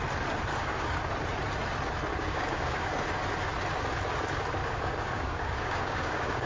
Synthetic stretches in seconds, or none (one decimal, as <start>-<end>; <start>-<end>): 0.5-1.0; 2.1-3.1; 4.6-6.5